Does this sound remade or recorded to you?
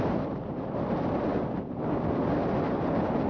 recorded